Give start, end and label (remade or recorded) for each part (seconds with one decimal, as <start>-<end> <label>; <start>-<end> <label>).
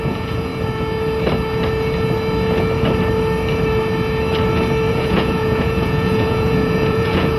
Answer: 0.0-0.5 remade; 0.5-4.9 recorded; 4.9-7.4 remade